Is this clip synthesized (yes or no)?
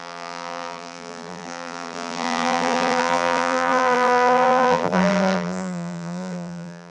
yes